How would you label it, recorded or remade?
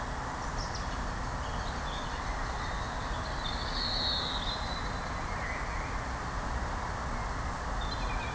recorded